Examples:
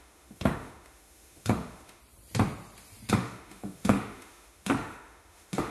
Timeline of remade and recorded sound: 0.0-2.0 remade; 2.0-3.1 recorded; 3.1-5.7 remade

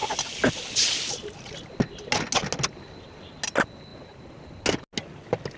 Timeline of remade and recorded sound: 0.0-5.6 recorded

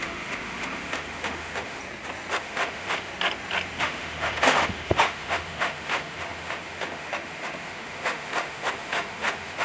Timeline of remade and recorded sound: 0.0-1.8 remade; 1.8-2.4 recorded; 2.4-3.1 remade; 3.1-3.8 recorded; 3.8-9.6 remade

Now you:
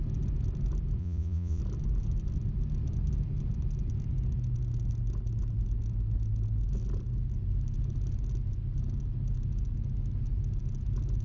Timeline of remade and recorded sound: 0.0-1.0 recorded; 1.0-1.6 remade; 1.6-11.2 recorded